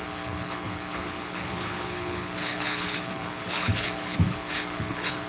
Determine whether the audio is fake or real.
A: fake